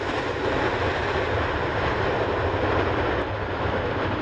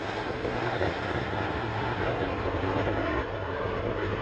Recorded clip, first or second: first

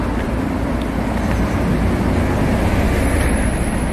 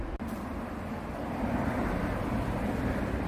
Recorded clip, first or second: first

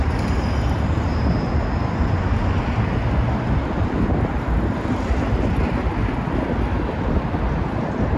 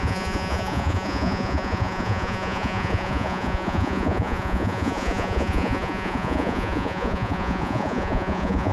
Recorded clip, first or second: first